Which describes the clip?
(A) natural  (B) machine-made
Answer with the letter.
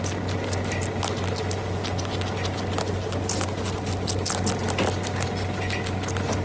A